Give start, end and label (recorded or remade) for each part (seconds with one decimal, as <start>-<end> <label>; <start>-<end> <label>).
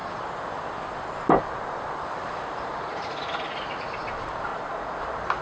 0.0-2.9 recorded; 2.9-3.6 remade; 3.6-4.5 recorded; 4.5-5.0 remade; 5.0-5.4 recorded